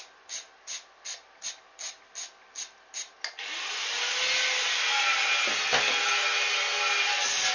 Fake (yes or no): no